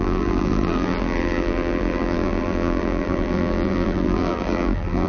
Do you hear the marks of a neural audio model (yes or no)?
yes